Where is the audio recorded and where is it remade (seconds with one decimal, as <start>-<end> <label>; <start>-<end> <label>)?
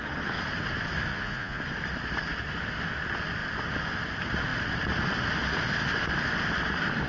0.0-1.1 recorded; 1.1-1.6 remade; 1.6-7.1 recorded